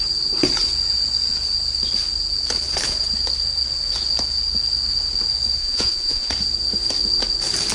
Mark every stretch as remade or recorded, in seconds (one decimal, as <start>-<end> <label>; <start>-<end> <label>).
0.0-5.6 recorded; 5.6-6.3 remade; 6.3-7.7 recorded